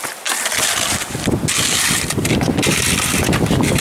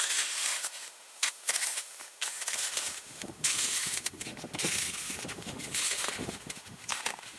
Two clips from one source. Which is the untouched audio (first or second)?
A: first